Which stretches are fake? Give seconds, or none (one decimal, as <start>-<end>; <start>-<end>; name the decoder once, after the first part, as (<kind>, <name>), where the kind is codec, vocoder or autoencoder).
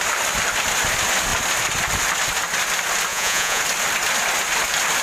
3.1-3.6 (vocoder, Vocos)